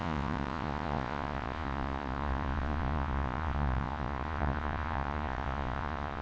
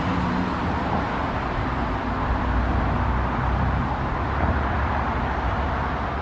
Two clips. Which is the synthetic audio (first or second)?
first